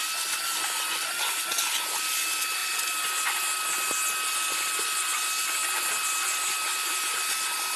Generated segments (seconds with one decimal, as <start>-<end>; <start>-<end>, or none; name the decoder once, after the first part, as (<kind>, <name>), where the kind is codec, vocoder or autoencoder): none